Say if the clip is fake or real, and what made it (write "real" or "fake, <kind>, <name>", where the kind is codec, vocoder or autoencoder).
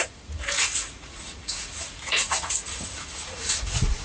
fake, vocoder, Vocos